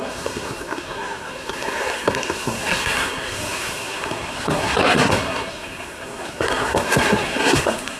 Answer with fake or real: fake